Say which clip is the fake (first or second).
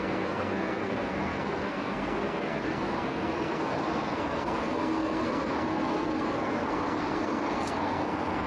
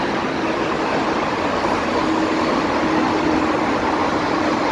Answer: first